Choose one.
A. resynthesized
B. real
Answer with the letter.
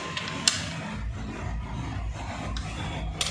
B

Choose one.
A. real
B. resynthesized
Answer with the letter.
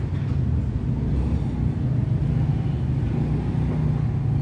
A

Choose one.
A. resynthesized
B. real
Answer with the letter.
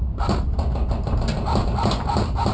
B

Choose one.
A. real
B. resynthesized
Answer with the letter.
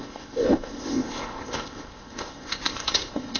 B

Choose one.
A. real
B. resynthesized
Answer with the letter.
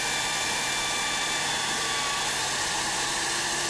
B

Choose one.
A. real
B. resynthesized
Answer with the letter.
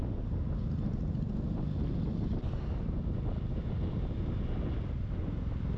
A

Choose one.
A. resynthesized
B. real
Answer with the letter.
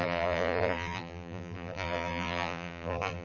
A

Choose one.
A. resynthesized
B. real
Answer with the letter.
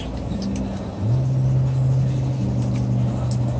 B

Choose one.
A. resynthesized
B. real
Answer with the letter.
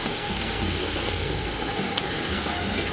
A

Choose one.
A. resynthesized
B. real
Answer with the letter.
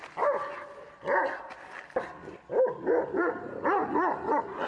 B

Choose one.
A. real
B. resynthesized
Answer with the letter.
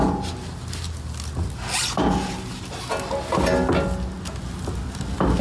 A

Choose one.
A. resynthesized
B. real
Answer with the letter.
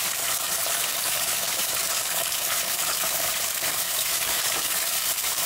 A